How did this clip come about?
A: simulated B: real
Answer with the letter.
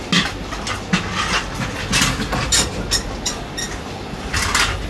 B